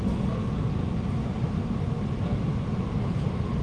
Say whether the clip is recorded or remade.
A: recorded